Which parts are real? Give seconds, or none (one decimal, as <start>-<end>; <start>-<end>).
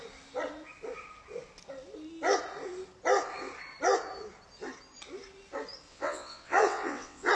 0.0-5.9